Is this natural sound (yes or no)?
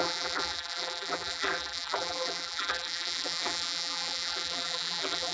no